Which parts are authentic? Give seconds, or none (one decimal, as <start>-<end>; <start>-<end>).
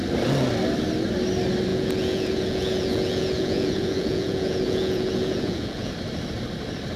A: 0.0-1.7; 5.9-7.0